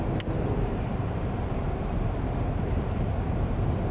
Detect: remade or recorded remade